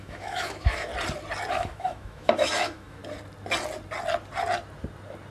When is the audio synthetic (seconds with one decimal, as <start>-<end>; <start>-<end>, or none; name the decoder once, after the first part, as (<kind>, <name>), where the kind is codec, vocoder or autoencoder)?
0.0-0.9 (autoencoder, DAC-VAE); 1.5-3.0